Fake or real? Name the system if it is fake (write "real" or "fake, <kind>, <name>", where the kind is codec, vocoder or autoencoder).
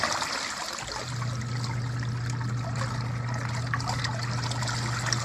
real